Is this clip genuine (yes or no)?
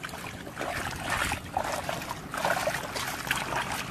yes